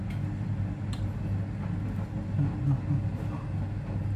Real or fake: real